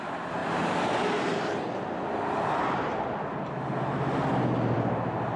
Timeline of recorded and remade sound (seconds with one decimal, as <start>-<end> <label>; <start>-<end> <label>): 0.0-0.4 recorded; 0.4-3.5 remade; 3.5-5.4 recorded